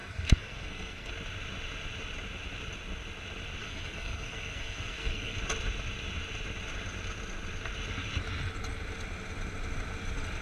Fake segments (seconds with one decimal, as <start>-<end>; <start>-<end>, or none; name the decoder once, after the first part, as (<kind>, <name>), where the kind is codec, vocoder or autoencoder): 0.0-1.1 (codec, SNAC); 3.6-5.4